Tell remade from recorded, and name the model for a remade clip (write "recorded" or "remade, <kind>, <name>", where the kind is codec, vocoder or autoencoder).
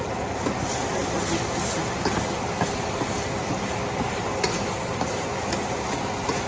recorded